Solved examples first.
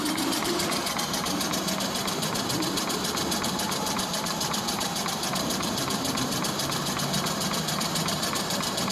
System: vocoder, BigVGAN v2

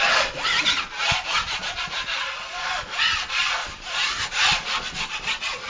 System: none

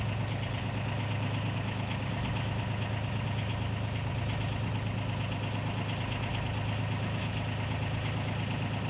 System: none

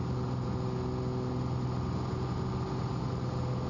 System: none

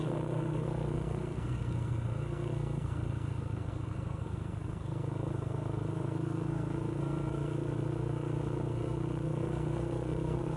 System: codec, SNAC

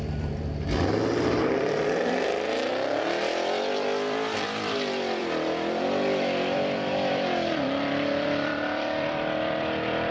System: vocoder, BigVGAN v2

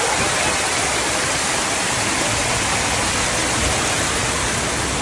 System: none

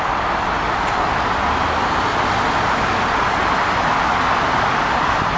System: none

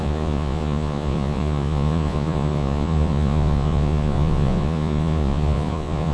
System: vocoder, Vocos